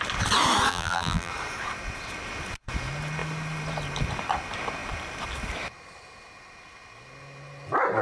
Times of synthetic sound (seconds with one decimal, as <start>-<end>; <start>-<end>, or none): 0.7-1.3